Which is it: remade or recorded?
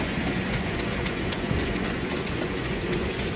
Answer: remade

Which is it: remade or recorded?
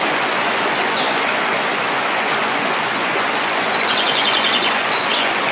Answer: remade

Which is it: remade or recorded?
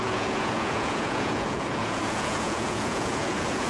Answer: remade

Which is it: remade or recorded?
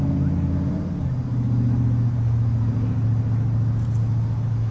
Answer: recorded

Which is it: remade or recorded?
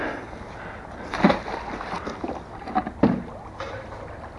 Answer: recorded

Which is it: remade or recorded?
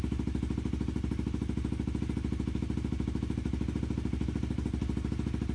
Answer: recorded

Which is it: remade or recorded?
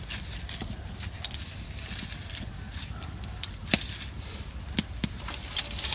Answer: recorded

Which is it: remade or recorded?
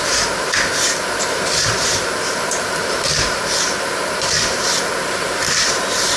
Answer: remade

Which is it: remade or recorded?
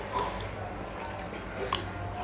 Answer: recorded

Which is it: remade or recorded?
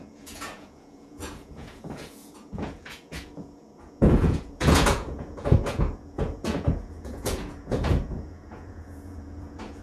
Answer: remade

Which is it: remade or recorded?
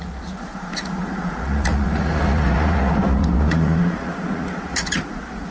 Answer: remade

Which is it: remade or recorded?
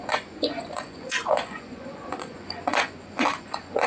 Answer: remade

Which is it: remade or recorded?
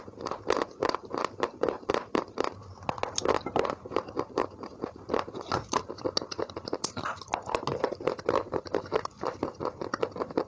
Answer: recorded